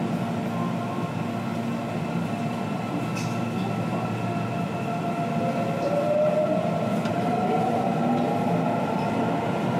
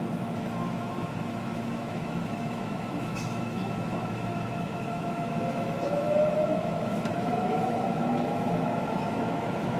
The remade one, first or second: second